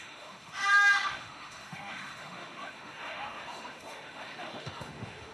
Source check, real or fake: fake